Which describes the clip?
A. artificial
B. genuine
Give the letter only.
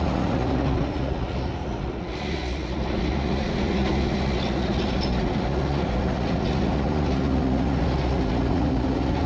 A